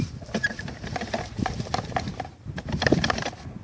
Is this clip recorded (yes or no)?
no